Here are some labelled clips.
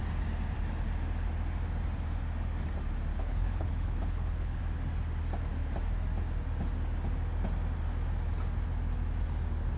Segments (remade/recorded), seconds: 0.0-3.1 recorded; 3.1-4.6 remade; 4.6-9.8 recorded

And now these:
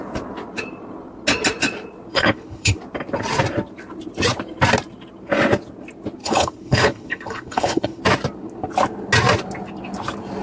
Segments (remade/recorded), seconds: 0.0-2.1 recorded; 2.1-2.8 remade; 2.8-6.2 recorded; 6.2-8.0 remade; 8.0-10.4 recorded

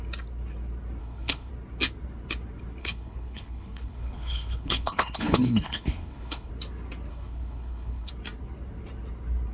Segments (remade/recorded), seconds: 0.0-1.0 recorded; 1.0-1.5 remade; 1.5-2.8 recorded; 2.8-6.5 remade; 6.5-7.1 recorded; 7.1-8.1 remade; 8.1-9.5 recorded

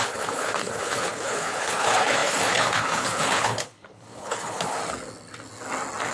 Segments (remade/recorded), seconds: 0.0-4.8 remade; 4.8-6.1 recorded

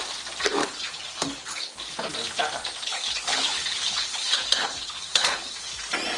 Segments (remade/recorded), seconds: 0.0-0.6 recorded; 0.6-1.8 remade; 1.8-2.8 recorded; 2.8-5.7 remade; 5.7-6.2 recorded

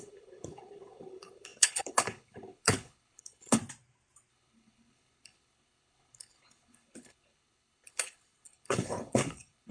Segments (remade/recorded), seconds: 0.0-3.6 remade; 3.6-4.3 recorded; 4.3-9.7 remade

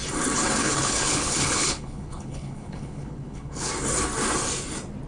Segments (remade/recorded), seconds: 0.0-0.6 recorded; 0.6-3.7 remade; 3.7-5.1 recorded